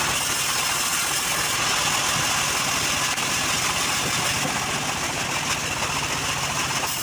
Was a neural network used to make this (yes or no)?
no